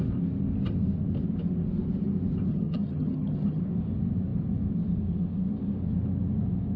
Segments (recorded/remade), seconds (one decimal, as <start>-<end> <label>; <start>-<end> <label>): 0.0-2.5 recorded; 2.5-3.6 remade; 3.6-6.8 recorded